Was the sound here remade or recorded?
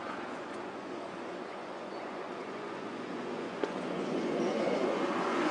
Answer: remade